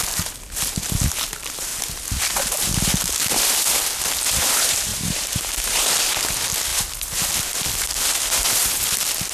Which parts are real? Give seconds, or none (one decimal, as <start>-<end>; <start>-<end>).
0.0-4.9; 5.9-9.3